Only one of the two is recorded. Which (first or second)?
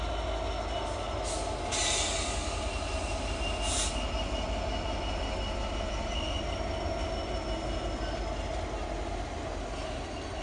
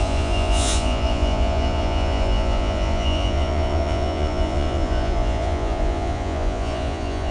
first